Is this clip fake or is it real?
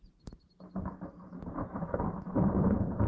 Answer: fake